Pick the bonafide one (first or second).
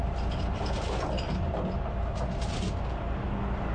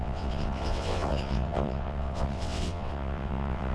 first